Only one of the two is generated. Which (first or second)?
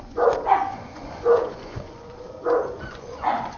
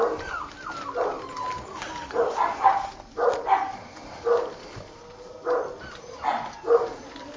first